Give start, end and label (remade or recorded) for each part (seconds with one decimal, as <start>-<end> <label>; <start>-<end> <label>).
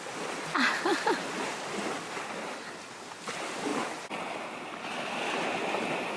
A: 0.0-0.9 recorded; 0.9-2.0 remade; 2.0-6.2 recorded